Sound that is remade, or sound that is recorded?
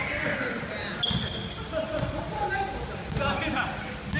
recorded